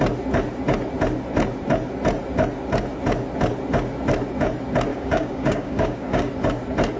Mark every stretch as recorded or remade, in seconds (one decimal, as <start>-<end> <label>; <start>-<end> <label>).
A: 0.0-4.9 recorded; 4.9-6.3 remade; 6.3-7.0 recorded